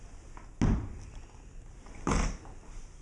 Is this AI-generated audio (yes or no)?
no